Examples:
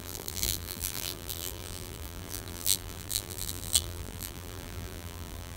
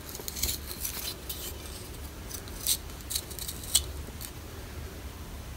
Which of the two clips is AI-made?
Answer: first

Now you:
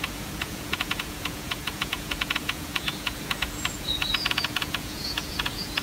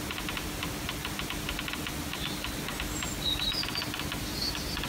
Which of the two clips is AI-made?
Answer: first